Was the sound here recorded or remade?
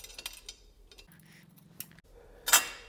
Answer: recorded